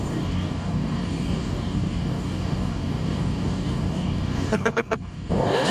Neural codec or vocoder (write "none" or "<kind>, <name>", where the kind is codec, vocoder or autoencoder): codec, DAC